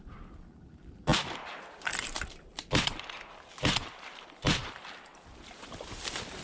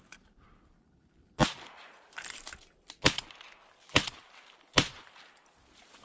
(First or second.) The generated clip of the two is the first